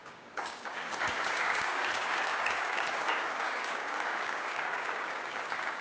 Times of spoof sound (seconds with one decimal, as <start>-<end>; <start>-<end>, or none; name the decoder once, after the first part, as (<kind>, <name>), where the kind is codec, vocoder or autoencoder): 0.0-5.8 (codec, DAC)